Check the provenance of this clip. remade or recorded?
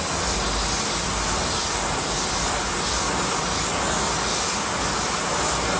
recorded